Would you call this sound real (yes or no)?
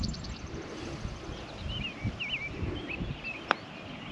yes